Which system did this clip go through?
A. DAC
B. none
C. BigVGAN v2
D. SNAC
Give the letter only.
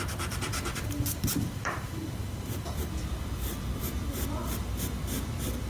C